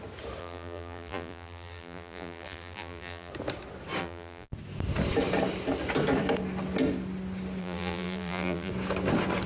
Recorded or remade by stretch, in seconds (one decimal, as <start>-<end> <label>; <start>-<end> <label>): 0.0-0.4 recorded; 0.4-3.3 remade; 3.3-4.0 recorded; 4.0-4.5 remade; 4.5-7.6 recorded; 7.6-8.7 remade; 8.7-9.5 recorded